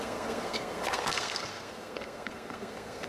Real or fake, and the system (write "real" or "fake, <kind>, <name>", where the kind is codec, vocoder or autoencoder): fake, codec, SNAC